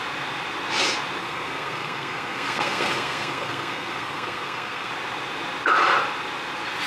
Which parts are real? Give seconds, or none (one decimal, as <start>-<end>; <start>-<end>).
0.0-1.2; 4.9-6.9